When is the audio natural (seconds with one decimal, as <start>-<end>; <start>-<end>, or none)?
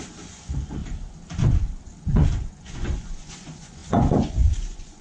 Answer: 0.8-2.0